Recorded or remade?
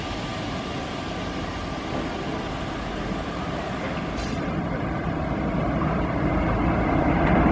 recorded